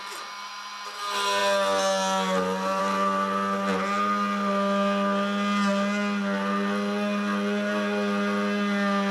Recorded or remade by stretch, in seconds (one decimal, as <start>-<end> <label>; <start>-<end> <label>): 0.0-9.1 recorded